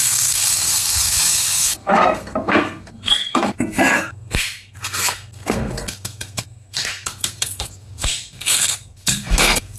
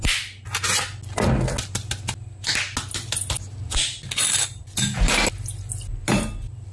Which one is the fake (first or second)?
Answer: first